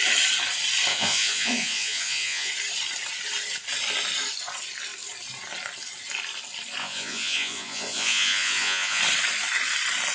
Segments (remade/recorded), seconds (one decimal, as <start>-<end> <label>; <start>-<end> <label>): 0.0-0.9 recorded; 0.9-2.5 remade; 2.5-6.8 recorded; 6.8-9.0 remade; 9.0-10.1 recorded